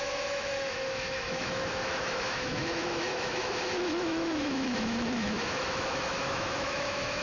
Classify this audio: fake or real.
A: fake